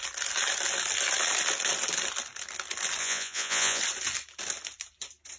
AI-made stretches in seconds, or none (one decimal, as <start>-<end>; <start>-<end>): 3.0-3.8